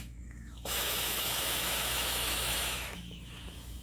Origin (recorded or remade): remade